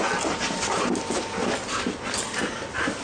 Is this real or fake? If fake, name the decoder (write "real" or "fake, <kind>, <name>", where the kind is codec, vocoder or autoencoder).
real